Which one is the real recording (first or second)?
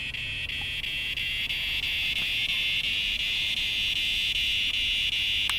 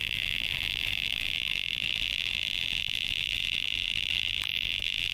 first